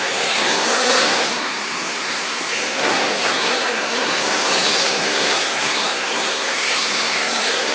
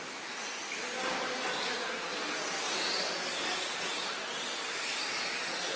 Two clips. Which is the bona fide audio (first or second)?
second